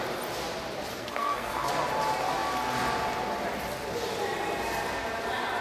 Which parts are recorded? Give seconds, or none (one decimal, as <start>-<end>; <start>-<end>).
0.0-0.9; 1.7-5.6